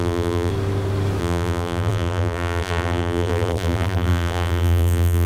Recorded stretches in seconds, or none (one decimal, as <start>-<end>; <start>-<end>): 0.5-1.2